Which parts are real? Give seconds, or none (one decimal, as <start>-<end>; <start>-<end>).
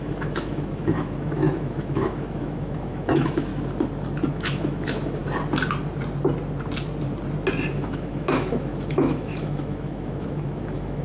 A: 3.5-4.3; 5.2-7.7